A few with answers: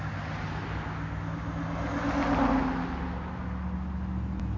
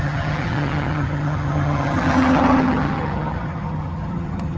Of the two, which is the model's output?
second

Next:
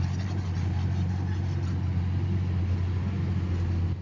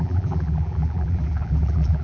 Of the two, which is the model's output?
second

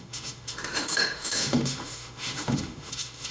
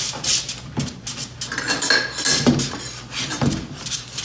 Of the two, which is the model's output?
first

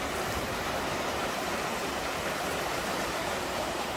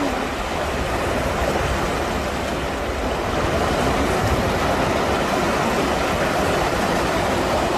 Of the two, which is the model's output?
first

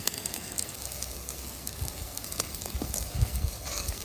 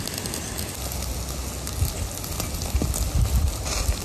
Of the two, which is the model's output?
first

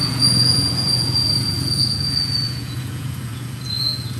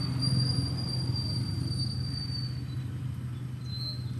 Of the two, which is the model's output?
first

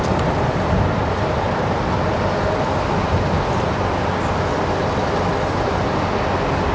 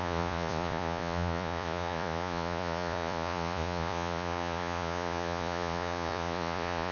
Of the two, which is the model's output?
second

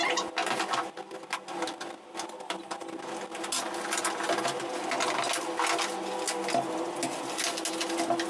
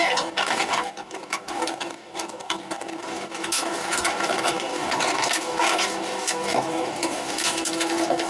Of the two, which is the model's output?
second